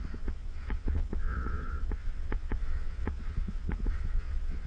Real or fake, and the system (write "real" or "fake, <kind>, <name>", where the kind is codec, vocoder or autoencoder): fake, vocoder, Vocos